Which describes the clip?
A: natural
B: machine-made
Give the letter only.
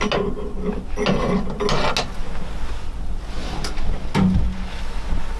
A